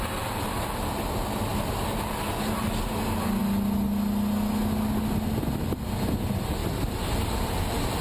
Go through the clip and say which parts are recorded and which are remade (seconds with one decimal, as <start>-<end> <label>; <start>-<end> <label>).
0.0-6.6 recorded; 6.6-8.0 remade